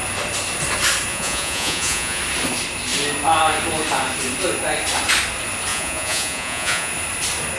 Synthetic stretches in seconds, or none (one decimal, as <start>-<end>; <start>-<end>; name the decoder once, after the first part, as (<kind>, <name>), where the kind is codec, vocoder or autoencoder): 1.1-2.2 (vocoder, Vocos); 5.7-6.9